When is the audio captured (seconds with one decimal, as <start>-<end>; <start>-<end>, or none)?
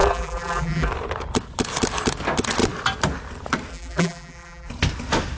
0.9-3.7; 4.7-5.4